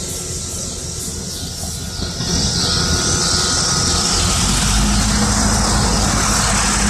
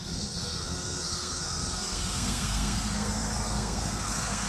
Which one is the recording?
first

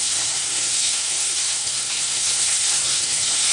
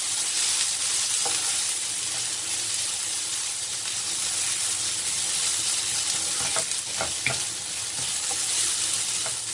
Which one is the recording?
second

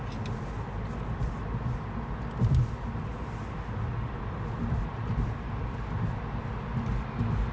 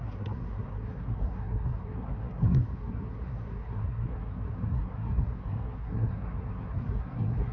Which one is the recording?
first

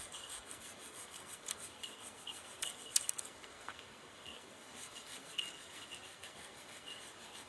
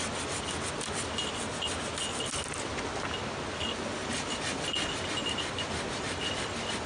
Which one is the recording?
second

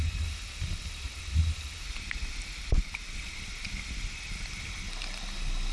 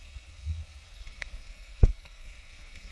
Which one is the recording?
first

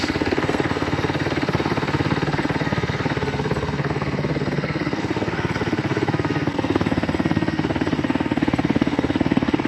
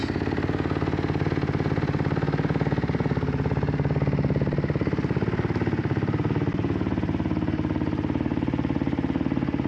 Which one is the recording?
second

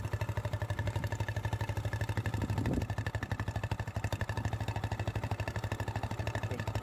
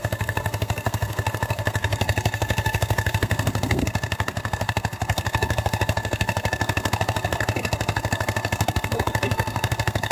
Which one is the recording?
first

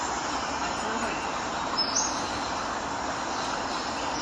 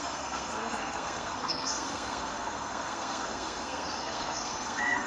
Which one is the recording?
first